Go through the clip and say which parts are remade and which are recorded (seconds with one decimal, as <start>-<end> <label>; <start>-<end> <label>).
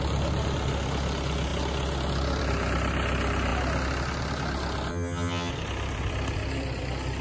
0.0-4.9 recorded; 4.9-5.5 remade; 5.5-7.2 recorded